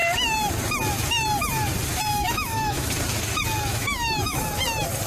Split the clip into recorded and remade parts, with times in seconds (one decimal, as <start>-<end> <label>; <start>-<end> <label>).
0.0-2.1 recorded; 2.1-2.9 remade; 2.9-3.7 recorded; 3.7-4.4 remade; 4.4-5.1 recorded